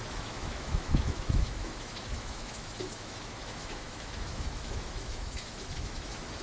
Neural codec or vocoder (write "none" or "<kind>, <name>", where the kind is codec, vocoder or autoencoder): autoencoder, DAC-VAE